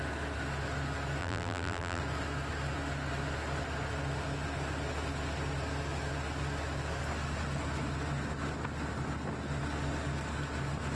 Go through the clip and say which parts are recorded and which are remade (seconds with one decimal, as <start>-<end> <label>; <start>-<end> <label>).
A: 0.0-1.2 recorded; 1.2-2.0 remade; 2.0-10.9 recorded